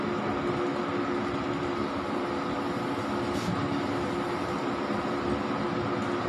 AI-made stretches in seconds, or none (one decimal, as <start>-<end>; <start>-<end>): none